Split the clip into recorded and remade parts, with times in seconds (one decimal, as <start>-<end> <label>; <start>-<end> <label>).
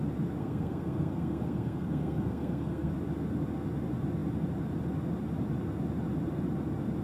0.0-0.4 recorded; 0.4-2.9 remade; 2.9-7.0 recorded